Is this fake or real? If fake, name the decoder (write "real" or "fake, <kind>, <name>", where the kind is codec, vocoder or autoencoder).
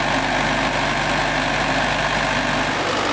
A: real